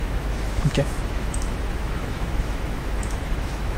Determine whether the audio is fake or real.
fake